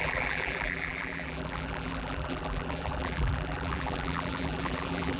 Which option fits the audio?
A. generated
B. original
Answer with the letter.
A